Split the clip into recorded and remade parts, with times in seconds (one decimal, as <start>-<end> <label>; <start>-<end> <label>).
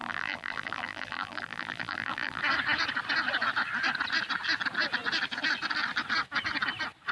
0.0-2.4 remade; 2.4-7.1 recorded